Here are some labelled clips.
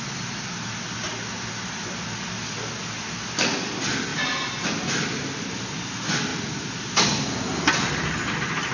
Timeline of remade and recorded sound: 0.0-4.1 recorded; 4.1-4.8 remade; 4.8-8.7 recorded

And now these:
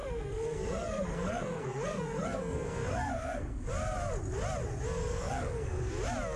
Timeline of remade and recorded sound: 0.0-3.7 remade; 3.7-5.1 recorded; 5.1-5.9 remade; 5.9-6.4 recorded

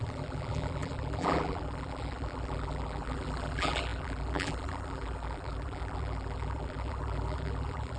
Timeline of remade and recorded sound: 0.0-8.0 remade